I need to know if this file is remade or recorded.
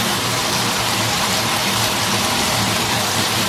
remade